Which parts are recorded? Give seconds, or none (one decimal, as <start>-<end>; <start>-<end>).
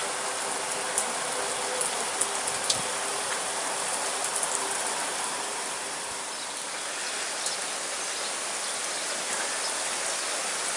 0.0-3.1; 6.3-10.8